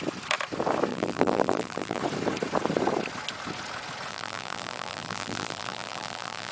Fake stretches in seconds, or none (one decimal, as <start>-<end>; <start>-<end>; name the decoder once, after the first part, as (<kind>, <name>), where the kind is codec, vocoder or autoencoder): 0.9-2.0 (vocoder, BigVGAN v2); 4.1-6.5